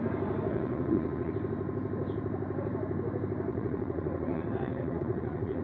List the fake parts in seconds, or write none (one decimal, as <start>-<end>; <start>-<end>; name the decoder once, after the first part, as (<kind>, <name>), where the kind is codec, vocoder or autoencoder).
0.5-1.3 (vocoder, WaveNeXt); 3.5-5.6